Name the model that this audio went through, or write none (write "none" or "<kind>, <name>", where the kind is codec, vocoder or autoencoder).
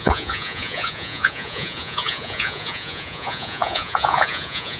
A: vocoder, Vocos